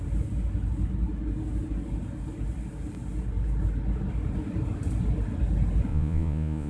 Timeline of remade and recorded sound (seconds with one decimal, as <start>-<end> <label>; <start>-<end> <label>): 0.0-5.9 recorded; 5.9-6.7 remade